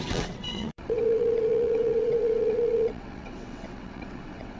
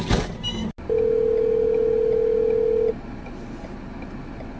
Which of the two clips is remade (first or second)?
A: first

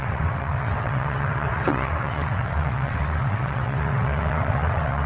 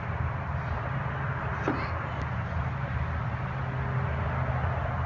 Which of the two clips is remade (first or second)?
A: first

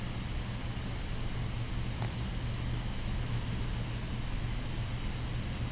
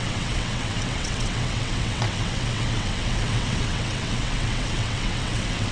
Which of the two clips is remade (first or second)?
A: second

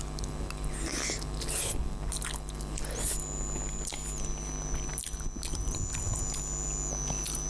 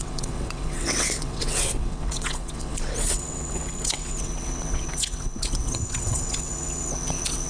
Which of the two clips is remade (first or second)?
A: second